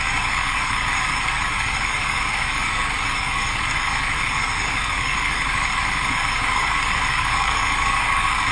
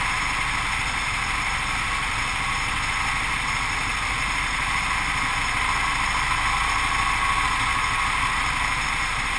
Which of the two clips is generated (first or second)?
first